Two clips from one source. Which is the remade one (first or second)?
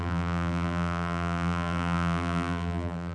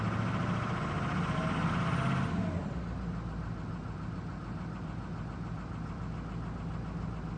first